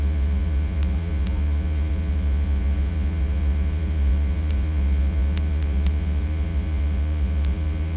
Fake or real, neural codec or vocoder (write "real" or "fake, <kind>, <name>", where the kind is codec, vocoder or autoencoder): fake, vocoder, Vocos